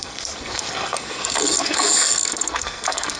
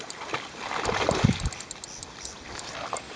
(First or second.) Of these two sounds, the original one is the second